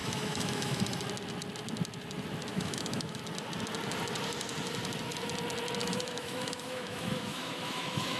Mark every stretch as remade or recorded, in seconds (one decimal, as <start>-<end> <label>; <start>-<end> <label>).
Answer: 0.0-0.8 remade; 0.8-2.5 recorded; 2.5-3.2 remade; 3.2-5.8 recorded; 5.8-8.2 remade